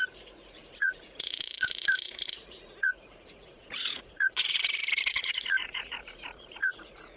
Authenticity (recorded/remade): remade